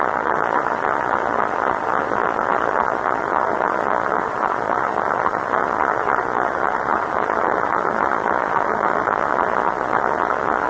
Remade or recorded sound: remade